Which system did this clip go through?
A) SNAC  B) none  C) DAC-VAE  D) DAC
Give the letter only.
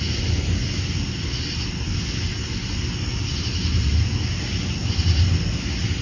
B